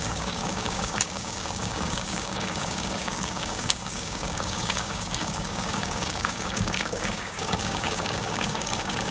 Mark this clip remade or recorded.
remade